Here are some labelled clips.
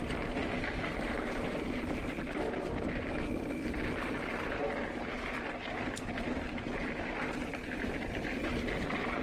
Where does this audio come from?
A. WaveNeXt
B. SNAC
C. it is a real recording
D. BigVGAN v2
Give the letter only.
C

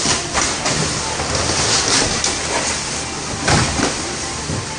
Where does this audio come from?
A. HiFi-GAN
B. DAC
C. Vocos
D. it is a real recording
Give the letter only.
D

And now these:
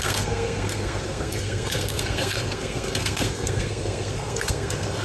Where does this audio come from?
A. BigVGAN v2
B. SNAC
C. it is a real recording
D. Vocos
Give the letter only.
B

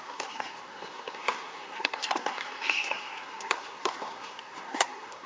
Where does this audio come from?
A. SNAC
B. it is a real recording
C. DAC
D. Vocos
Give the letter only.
A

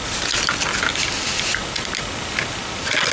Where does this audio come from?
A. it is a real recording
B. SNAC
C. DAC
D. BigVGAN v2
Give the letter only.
A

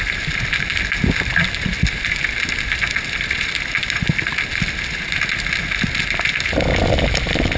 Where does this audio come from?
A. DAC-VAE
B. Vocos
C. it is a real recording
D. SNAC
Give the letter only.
C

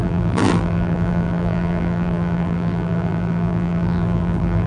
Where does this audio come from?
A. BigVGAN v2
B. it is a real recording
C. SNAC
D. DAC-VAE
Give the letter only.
A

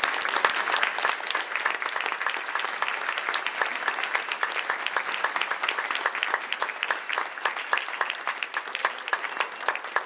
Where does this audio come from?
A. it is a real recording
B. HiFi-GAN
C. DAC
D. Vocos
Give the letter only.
A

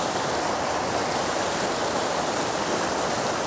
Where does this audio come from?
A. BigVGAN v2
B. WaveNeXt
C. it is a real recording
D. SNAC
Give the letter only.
C